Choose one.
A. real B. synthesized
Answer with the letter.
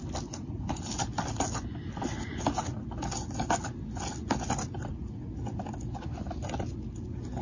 A